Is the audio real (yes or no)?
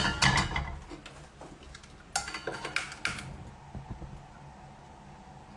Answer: yes